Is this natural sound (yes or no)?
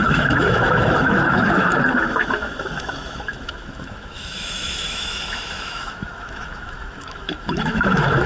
no